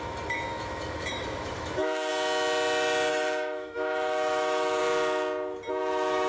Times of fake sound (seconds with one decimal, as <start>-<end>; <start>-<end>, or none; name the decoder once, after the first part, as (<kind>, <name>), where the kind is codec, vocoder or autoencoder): 0.0-2.1 (autoencoder, DAC-VAE); 3.1-4.8; 5.7-6.3